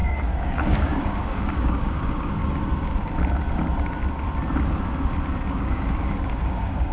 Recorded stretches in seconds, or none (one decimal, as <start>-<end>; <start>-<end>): 2.4-5.5